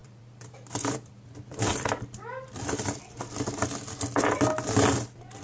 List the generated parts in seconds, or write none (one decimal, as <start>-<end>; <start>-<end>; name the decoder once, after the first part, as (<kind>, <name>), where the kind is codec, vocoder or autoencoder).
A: 0.0-3.2 (vocoder, BigVGAN v2)